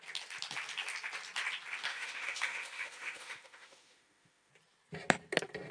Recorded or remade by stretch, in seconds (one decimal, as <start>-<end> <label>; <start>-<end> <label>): 0.0-1.9 recorded; 1.9-4.5 remade; 4.5-5.7 recorded